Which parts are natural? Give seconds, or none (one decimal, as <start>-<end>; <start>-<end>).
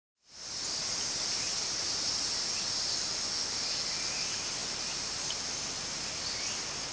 2.5-6.9